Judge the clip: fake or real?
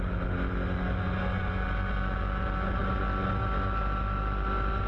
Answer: real